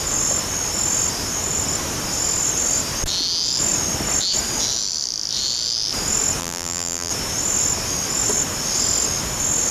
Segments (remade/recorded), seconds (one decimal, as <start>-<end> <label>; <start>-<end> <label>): 0.0-6.4 recorded; 6.4-7.1 remade; 7.1-9.7 recorded